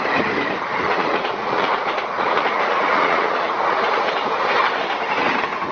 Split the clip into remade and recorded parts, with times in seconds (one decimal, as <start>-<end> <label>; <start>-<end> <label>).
0.0-0.7 recorded; 0.7-4.1 remade; 4.1-5.7 recorded

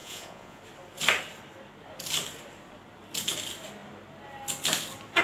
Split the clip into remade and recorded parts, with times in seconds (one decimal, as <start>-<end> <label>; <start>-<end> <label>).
0.0-0.6 remade; 0.6-5.2 recorded

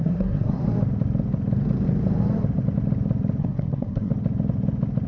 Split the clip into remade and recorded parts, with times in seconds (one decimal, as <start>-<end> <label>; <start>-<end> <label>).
0.0-0.6 remade; 0.6-3.4 recorded; 3.4-4.1 remade; 4.1-5.1 recorded

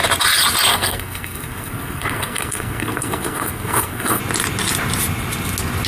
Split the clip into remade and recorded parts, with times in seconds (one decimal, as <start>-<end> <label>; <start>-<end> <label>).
0.0-0.7 recorded; 0.7-4.2 remade; 4.2-5.9 recorded

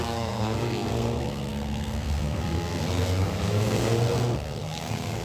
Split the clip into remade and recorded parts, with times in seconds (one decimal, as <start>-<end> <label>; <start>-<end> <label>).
0.0-5.2 remade

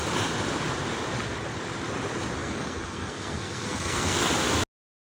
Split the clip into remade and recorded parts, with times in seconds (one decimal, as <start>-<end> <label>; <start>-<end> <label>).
0.0-2.4 recorded; 2.4-4.3 remade; 4.3-5.0 recorded

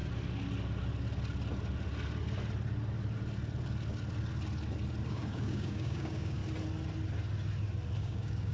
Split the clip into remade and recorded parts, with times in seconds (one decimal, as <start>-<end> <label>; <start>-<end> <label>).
0.0-5.1 recorded; 5.1-6.4 remade; 6.4-8.0 recorded; 8.0-8.5 remade

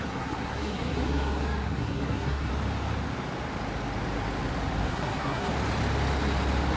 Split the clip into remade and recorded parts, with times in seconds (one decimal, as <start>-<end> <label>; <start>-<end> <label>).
0.0-2.5 remade; 2.5-4.9 recorded; 4.9-5.5 remade; 5.5-6.8 recorded